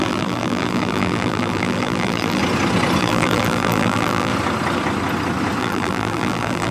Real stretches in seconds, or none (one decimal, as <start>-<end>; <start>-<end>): 2.4-3.0; 4.3-5.6